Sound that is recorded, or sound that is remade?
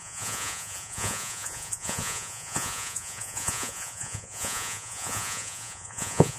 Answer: remade